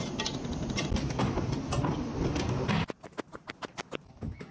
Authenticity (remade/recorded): recorded